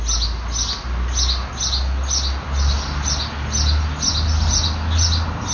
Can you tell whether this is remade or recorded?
recorded